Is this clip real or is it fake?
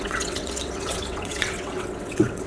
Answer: fake